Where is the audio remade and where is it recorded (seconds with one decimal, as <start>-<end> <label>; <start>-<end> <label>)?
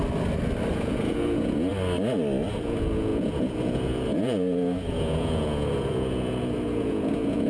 0.0-0.7 recorded; 0.7-1.7 remade; 1.7-2.5 recorded; 2.5-7.5 remade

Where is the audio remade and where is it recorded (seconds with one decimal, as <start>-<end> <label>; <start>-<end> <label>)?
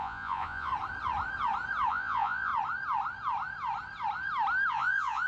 0.0-0.7 remade; 0.7-1.9 recorded; 1.9-2.5 remade; 2.5-4.7 recorded; 4.7-5.3 remade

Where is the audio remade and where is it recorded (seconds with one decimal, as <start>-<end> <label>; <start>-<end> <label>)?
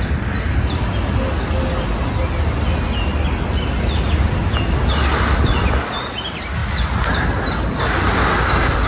0.0-8.9 recorded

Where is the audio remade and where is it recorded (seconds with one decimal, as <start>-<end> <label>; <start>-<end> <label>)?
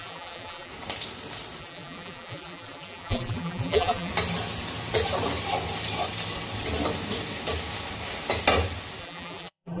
0.0-0.7 remade; 0.7-1.6 recorded; 1.6-4.1 remade; 4.1-9.0 recorded; 9.0-9.8 remade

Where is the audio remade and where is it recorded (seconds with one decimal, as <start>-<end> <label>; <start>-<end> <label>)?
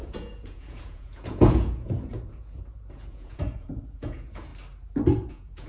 0.0-4.5 remade; 4.5-5.3 recorded; 5.3-5.7 remade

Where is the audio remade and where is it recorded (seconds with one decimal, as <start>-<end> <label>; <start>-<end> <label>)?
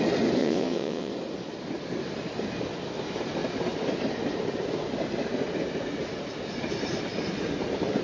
0.0-0.4 recorded; 0.4-1.1 remade; 1.1-8.0 recorded